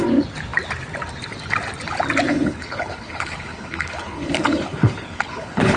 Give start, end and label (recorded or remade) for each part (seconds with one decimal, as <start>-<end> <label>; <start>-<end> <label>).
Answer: 0.0-2.3 recorded; 2.3-5.8 remade